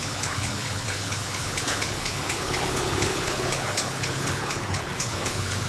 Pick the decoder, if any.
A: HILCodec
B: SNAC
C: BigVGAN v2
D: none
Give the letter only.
A